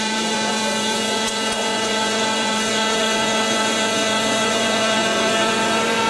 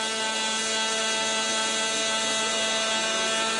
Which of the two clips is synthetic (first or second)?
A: first